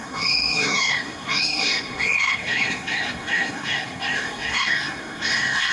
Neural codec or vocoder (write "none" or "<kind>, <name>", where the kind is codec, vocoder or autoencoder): codec, SNAC